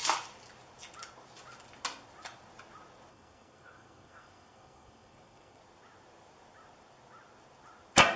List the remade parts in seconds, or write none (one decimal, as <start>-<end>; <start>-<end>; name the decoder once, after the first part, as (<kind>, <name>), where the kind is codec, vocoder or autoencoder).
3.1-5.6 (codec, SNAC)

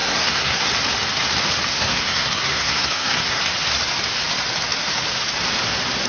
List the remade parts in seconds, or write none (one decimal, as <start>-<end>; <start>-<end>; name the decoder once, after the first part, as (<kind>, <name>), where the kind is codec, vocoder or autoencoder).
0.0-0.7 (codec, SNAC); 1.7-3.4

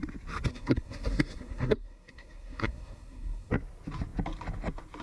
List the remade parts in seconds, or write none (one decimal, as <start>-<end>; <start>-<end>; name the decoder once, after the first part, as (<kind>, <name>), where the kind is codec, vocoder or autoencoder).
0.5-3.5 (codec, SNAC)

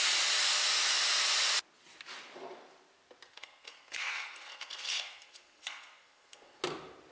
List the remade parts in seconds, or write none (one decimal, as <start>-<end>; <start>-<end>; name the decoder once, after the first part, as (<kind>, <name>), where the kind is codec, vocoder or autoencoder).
3.3-6.6 (codec, SNAC)

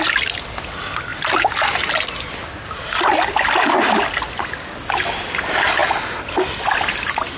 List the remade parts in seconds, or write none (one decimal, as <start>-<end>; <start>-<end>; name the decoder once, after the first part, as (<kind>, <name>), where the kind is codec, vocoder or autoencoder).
none

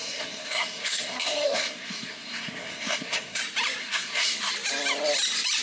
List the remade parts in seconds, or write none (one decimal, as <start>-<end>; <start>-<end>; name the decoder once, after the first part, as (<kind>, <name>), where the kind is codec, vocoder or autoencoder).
0.0-3.4 (codec, SNAC); 3.8-4.5

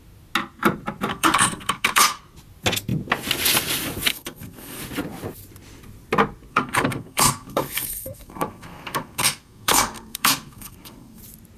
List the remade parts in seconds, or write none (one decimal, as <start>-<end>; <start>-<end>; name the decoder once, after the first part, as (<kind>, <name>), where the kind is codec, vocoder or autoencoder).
1.1-2.2 (codec, SNAC); 4.1-4.8; 6.5-11.2